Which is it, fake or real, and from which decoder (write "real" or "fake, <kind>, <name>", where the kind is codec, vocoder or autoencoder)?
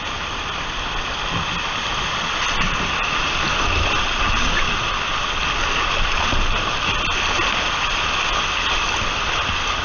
real